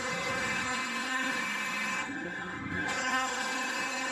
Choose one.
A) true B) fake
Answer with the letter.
B